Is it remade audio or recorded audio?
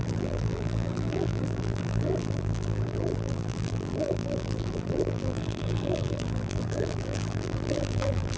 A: remade